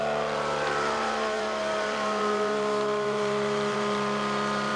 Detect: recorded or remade remade